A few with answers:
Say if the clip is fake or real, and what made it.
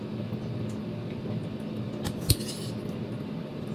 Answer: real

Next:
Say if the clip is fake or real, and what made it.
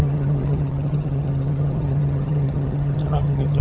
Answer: fake, vocoder, HiFi-GAN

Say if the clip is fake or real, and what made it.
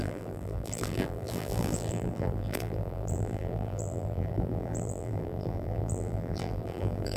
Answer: fake, vocoder, BigVGAN v2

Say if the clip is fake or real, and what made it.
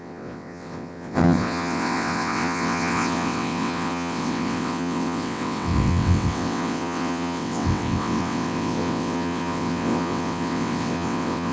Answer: fake, vocoder, WaveNeXt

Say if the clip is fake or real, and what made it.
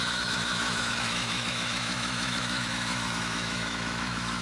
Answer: fake, autoencoder, DAC-VAE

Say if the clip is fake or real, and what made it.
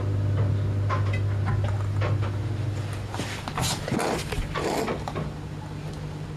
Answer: real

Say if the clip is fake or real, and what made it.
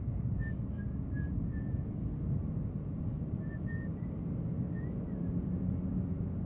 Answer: real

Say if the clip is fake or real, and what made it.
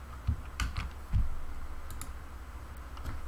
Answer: real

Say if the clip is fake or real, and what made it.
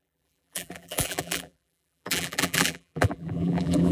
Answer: fake, vocoder, BigVGAN v2